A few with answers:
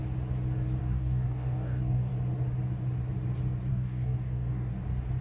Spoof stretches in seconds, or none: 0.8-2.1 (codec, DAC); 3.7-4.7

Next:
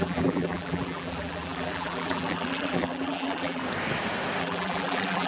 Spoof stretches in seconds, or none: 0.0-3.6 (vocoder, BigVGAN v2); 4.4-5.3